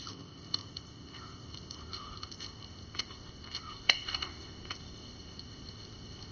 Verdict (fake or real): fake